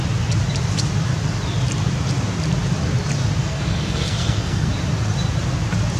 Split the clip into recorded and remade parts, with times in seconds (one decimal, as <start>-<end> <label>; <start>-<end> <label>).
0.0-3.4 recorded; 3.4-4.7 remade; 4.7-6.0 recorded